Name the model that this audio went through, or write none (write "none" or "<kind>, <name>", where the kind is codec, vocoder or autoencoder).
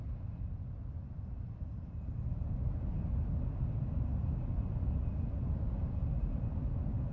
none